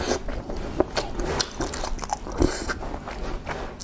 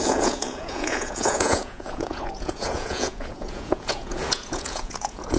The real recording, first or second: first